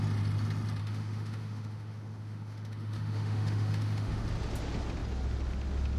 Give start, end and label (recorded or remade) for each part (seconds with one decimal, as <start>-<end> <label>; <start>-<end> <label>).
0.0-0.8 recorded; 0.8-4.2 remade; 4.2-6.0 recorded